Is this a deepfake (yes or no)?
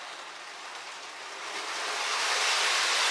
no